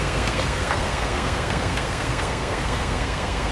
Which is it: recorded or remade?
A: remade